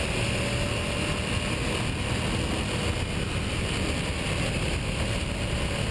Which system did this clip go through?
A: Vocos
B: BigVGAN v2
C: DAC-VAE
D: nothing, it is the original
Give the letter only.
D